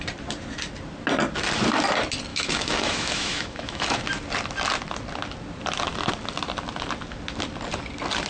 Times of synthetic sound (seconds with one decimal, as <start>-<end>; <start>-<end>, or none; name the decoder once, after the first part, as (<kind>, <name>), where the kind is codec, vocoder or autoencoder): 2.3-4.0 (autoencoder, DAC-VAE)